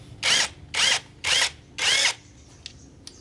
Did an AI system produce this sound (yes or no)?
no